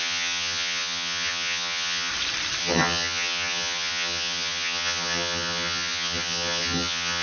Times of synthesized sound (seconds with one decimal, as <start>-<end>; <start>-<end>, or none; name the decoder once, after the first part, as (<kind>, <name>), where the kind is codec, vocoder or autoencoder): 0.0-2.1 (vocoder, HiFi-GAN); 2.6-7.2